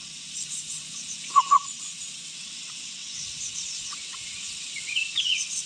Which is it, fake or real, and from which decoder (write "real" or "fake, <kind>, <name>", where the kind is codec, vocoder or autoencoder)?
fake, vocoder, WaveNeXt